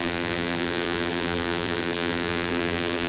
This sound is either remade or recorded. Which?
remade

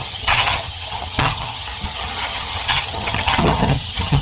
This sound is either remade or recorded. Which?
remade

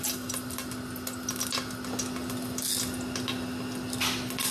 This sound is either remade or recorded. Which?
recorded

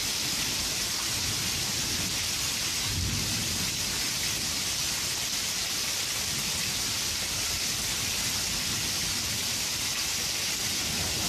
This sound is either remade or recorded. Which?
recorded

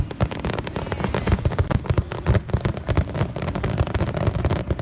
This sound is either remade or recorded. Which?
recorded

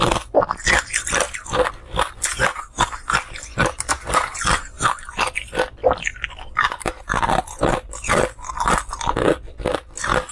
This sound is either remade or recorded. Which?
recorded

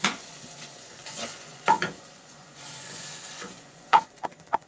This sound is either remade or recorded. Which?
remade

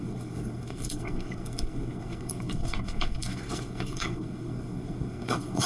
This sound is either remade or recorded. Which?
remade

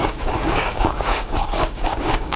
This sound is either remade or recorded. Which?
remade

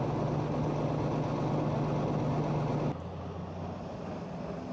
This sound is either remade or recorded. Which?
recorded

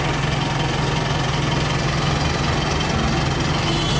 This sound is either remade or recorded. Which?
recorded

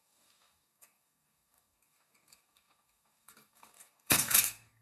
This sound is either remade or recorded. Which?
remade